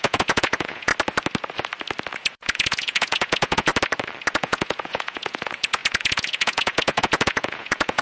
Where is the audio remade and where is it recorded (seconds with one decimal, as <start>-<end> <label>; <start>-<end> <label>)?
0.0-0.9 remade; 0.9-2.1 recorded; 2.1-3.7 remade; 3.7-4.3 recorded; 4.3-8.0 remade